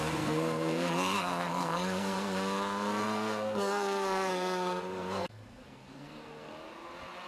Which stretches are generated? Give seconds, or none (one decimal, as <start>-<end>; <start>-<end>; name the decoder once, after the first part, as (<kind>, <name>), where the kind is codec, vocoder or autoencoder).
0.0-6.5 (codec, SNAC)